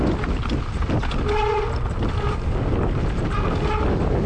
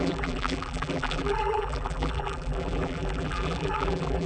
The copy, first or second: second